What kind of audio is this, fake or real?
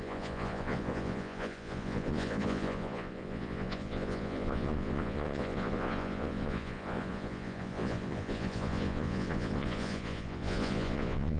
fake